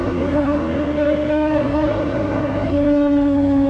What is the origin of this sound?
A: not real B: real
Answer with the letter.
A